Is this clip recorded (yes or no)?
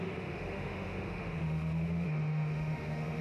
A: no